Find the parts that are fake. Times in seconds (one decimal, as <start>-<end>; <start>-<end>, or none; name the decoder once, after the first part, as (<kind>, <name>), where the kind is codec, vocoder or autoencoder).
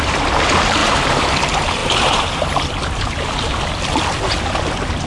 0.8-1.3 (vocoder, BigVGAN v2); 1.8-3.6